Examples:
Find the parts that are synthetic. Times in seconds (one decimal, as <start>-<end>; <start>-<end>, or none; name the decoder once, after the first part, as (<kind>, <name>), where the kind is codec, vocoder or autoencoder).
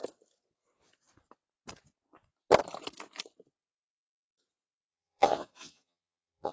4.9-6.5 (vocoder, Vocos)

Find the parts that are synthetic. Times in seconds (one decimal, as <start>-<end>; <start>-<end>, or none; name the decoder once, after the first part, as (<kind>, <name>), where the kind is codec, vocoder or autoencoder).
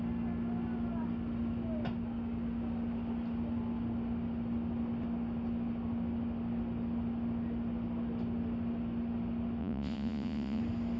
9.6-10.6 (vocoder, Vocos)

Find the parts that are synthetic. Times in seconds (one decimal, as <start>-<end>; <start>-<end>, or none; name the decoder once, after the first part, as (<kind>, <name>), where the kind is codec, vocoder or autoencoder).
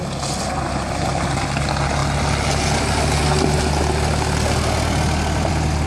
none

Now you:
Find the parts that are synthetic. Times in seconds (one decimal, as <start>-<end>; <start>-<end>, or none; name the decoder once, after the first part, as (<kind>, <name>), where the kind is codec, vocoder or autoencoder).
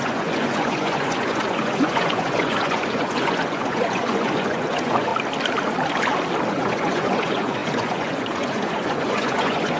0.0-5.1 (vocoder, Vocos); 6.5-9.8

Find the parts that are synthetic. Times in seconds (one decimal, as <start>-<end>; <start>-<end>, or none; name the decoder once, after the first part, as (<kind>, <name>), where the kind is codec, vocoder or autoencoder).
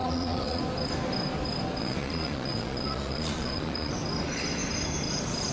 0.0-0.6 (vocoder, Vocos); 1.8-3.9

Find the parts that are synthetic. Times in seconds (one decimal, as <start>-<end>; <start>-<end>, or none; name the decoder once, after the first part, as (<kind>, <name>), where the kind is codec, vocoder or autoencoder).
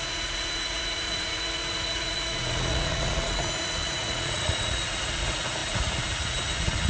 0.0-6.9 (vocoder, Vocos)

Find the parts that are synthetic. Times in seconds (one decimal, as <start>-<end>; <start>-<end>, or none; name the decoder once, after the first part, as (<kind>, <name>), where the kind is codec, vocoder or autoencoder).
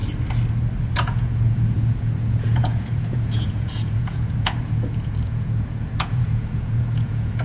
0.8-7.4 (vocoder, Vocos)